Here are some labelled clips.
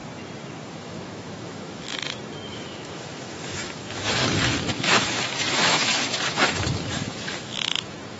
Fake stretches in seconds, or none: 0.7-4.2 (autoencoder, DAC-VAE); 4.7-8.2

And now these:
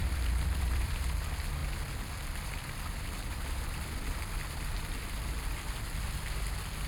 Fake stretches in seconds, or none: 0.0-1.1 (vocoder, BigVGAN v2)

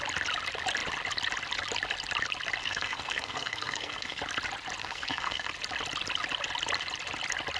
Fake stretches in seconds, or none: 2.6-4.2 (codec, SNAC); 4.8-5.5

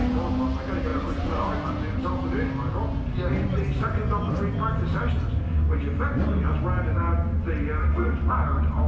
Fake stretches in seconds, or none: 7.8-8.3 (codec, SNAC)

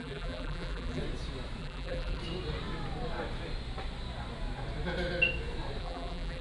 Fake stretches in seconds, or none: 0.0-1.0 (vocoder, BigVGAN v2); 1.6-2.2; 5.8-6.4

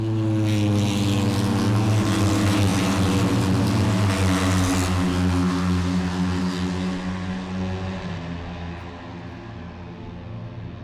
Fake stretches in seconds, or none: none

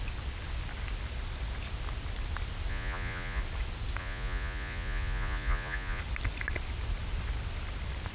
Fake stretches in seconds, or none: 2.7-3.4 (vocoder, Vocos); 4.0-6.0

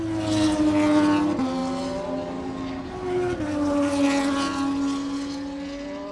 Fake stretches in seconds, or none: none